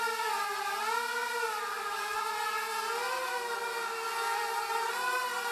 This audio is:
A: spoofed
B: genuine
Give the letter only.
B